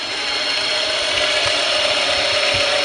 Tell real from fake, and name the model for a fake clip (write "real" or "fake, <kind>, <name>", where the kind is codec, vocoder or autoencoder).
real